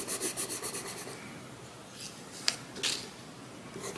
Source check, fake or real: real